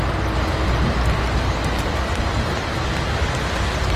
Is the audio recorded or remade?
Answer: recorded